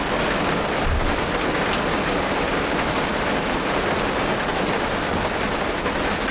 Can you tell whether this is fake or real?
real